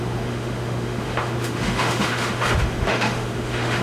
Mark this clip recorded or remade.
remade